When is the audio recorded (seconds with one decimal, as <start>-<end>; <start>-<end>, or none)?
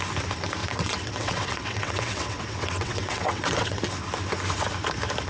0.0-0.6; 3.8-5.3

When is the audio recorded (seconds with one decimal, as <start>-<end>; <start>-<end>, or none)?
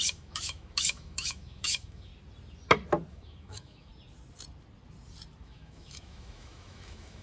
2.1-3.1; 3.9-5.4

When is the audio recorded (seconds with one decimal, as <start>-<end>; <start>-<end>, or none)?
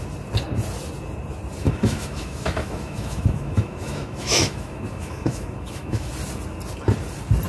0.0-1.6; 6.1-7.5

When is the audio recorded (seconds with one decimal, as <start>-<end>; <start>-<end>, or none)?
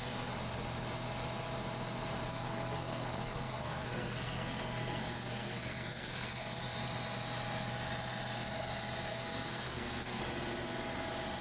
0.0-2.3; 6.6-9.1; 10.2-11.4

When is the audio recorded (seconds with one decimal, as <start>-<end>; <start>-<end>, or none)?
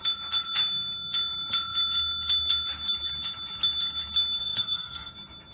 0.0-4.4; 5.1-5.5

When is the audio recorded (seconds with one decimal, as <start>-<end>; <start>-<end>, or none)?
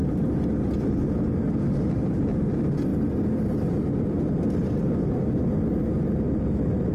0.0-6.9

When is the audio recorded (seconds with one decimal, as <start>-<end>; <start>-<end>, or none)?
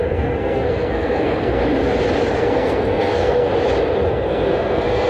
1.6-2.4; 3.5-4.1